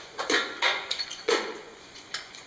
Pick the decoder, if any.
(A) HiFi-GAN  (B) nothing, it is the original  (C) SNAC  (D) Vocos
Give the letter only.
D